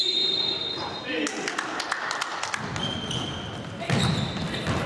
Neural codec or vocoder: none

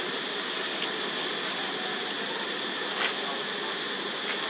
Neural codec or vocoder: none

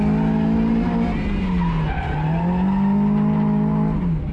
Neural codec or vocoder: none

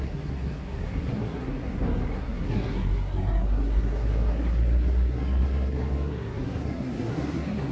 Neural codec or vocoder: codec, SNAC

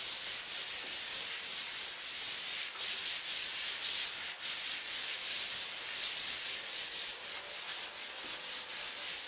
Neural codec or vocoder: none